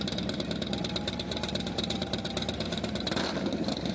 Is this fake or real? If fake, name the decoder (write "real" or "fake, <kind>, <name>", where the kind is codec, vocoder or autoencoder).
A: fake, vocoder, BigVGAN v2